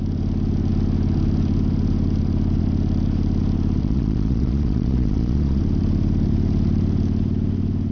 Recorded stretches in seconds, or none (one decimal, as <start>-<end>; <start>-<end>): 0.0-3.8; 5.6-7.9